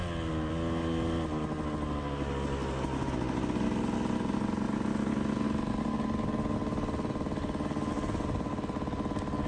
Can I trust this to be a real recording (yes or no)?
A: yes